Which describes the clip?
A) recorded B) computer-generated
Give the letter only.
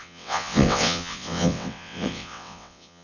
B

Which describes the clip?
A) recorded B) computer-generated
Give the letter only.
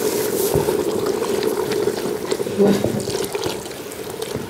A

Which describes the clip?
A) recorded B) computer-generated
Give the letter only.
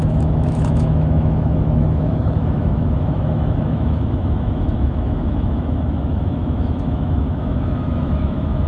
B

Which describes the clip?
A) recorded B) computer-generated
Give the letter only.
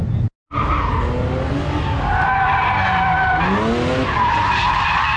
A